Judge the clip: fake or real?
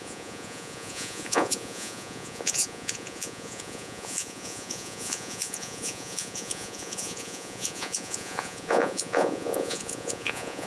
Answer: fake